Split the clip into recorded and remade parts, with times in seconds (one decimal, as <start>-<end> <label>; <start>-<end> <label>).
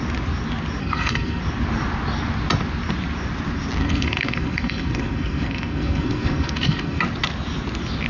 0.0-0.8 recorded; 0.8-1.4 remade; 1.4-3.8 recorded; 3.8-7.0 remade; 7.0-8.1 recorded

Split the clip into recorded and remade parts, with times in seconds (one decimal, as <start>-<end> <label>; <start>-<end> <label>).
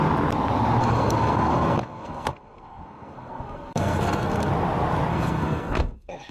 0.0-0.8 recorded; 0.8-4.5 remade; 4.5-5.1 recorded; 5.1-6.3 remade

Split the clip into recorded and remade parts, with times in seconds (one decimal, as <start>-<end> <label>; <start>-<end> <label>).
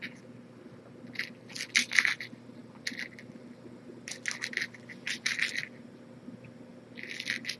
0.0-7.6 recorded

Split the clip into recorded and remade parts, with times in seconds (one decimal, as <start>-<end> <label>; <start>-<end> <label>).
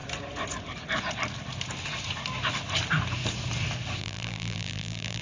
0.0-4.0 recorded; 4.0-5.2 remade